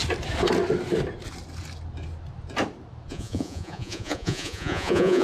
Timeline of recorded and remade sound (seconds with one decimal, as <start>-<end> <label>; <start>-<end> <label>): 0.0-3.1 recorded; 3.1-5.2 remade